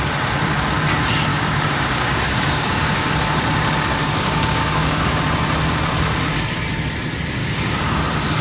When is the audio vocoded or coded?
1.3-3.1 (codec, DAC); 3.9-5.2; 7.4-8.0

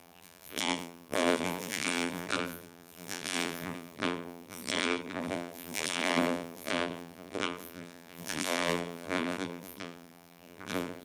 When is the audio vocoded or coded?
0.0-11.0 (vocoder, BigVGAN v2)

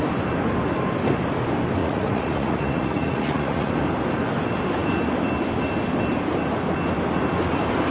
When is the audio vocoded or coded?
1.8-3.7 (vocoder, Vocos)

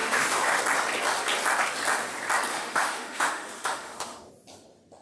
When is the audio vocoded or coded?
0.0-0.6 (autoencoder, DAC-VAE); 2.5-4.3

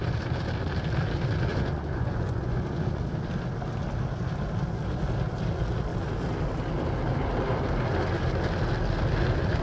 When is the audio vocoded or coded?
1.5-3.0 (vocoder, Vocos)